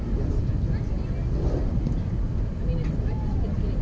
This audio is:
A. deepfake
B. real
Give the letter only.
B